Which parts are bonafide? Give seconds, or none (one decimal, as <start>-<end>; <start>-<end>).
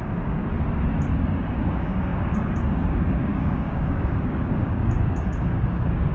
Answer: 0.4-1.6